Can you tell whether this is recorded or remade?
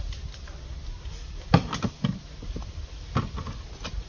recorded